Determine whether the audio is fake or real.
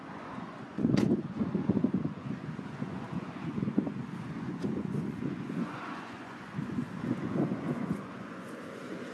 fake